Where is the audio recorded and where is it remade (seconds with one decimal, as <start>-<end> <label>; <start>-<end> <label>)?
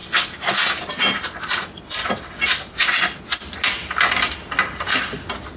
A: 0.0-5.6 recorded